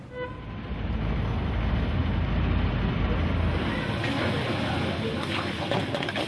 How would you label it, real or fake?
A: real